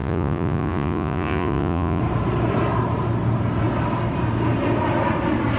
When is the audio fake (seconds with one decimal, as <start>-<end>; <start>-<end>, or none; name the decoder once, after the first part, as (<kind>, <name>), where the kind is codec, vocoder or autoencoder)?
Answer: 0.0-2.0 (vocoder, Vocos)